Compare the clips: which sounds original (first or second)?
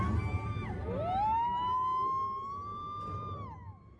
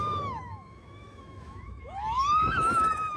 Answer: first